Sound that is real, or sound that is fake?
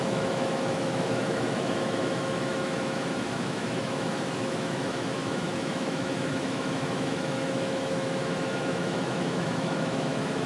fake